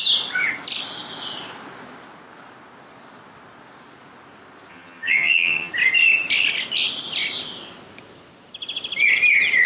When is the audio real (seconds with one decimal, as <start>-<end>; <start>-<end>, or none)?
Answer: 0.0-4.7; 5.7-9.7